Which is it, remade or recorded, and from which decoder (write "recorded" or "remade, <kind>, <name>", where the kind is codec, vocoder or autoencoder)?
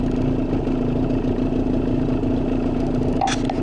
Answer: recorded